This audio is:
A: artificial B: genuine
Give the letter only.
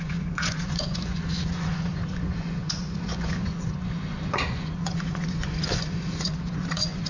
A